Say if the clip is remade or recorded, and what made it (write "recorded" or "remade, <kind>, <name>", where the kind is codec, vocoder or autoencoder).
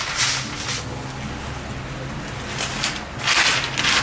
recorded